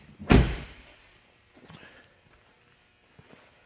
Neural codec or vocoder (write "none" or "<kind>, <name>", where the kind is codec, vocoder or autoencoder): none